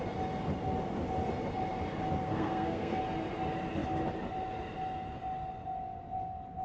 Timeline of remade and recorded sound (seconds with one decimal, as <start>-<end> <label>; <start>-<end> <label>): 0.0-2.2 recorded; 2.2-3.0 remade; 3.0-6.6 recorded

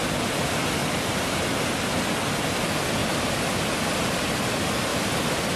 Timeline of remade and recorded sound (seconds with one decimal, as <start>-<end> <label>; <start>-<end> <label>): 0.0-0.8 recorded; 0.8-1.6 remade; 1.6-3.0 recorded; 3.0-4.0 remade; 4.0-4.9 recorded; 4.9-5.6 remade

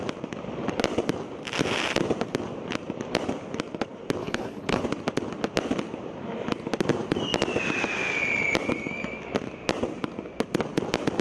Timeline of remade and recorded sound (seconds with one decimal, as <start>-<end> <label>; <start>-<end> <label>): 0.0-4.2 recorded; 4.2-4.8 remade; 4.8-11.2 recorded

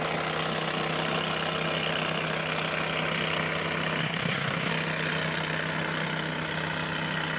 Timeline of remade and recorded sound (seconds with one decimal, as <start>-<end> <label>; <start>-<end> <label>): 0.0-4.0 recorded; 4.0-4.7 remade; 4.7-7.4 recorded

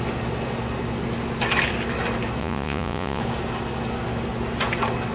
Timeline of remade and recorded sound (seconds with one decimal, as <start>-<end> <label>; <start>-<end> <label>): 0.0-2.4 recorded; 2.4-3.2 remade; 3.2-5.1 recorded